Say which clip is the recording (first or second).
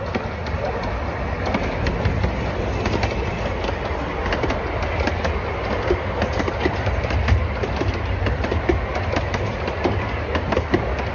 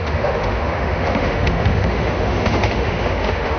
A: first